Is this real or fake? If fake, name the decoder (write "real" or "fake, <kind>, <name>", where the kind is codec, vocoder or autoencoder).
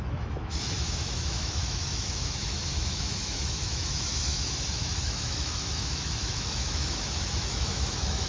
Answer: fake, autoencoder, DAC-VAE